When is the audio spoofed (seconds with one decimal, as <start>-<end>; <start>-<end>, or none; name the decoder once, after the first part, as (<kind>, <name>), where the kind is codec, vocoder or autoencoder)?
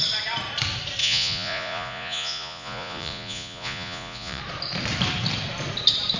1.0-4.4 (vocoder, Vocos)